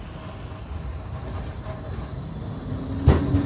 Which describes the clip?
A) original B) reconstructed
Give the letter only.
A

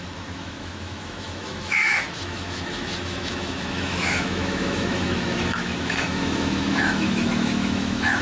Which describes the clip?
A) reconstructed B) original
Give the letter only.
A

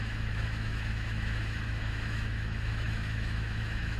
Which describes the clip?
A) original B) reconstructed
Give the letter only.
B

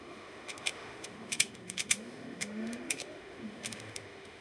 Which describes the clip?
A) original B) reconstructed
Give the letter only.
B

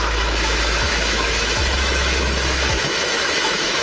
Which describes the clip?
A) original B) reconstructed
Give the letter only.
B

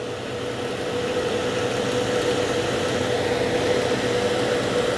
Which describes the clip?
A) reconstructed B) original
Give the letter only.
B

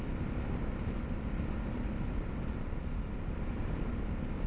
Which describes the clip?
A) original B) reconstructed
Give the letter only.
A